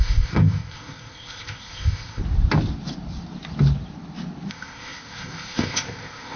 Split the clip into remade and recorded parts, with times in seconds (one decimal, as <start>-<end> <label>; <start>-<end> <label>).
0.0-2.2 remade; 2.2-4.5 recorded; 4.5-6.4 remade

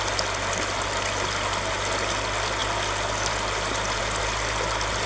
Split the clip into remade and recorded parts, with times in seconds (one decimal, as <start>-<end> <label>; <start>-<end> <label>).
0.0-5.1 recorded

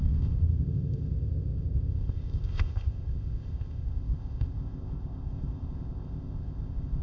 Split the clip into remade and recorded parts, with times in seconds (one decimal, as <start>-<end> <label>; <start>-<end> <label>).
0.0-7.0 remade

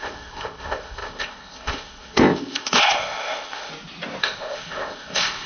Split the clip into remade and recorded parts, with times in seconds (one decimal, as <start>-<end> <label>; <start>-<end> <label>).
0.0-3.7 remade; 3.7-4.2 recorded; 4.2-5.5 remade

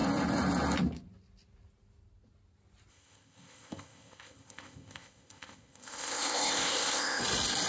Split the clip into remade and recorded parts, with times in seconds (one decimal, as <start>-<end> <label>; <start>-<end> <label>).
0.0-2.9 recorded; 2.9-7.2 remade; 7.2-7.7 recorded

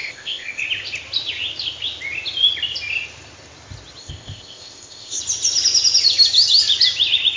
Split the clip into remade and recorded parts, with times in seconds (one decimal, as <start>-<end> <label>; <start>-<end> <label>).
0.0-0.6 remade; 0.6-4.0 recorded; 4.0-5.2 remade; 5.2-7.4 recorded

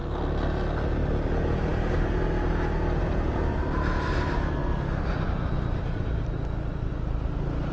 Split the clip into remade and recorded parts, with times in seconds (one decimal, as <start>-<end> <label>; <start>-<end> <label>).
0.0-7.7 recorded